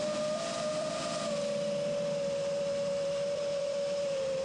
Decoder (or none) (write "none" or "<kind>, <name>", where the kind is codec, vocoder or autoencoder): none